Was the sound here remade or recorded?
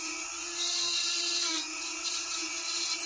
remade